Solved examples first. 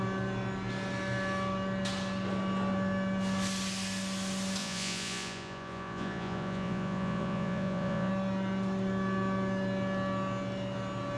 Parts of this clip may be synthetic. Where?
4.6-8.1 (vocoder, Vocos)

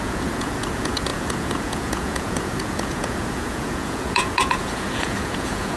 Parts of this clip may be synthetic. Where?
0.0-5.8 (vocoder, Vocos)

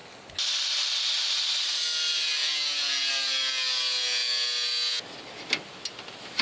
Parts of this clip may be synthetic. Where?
2.4-3.1 (vocoder, Vocos)

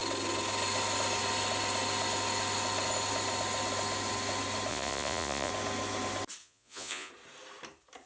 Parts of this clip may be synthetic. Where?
4.7-5.5 (vocoder, Vocos); 6.4-7.1

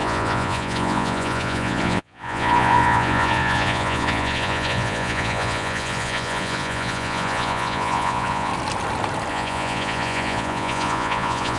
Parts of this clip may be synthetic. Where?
0.0-8.5 (vocoder, Vocos); 9.3-11.6